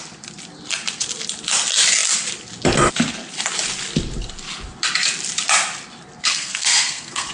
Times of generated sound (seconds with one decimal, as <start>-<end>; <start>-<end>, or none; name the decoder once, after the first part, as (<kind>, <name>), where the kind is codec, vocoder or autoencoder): 6.3-7.3 (codec, SNAC)